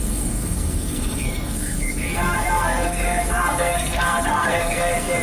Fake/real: fake